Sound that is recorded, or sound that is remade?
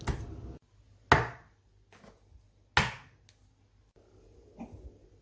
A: recorded